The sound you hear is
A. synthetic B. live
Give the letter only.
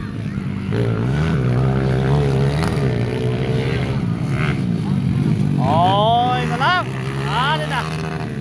B